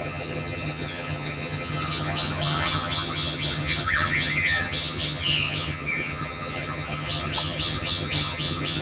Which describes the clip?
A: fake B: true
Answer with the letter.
A